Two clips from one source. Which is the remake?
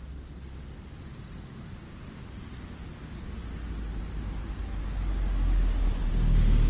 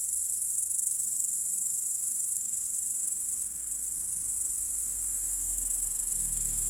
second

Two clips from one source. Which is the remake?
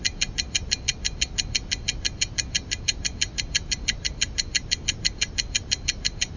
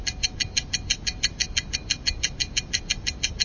first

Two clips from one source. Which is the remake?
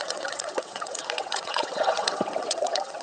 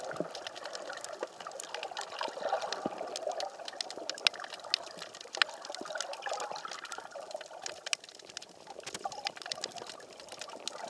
first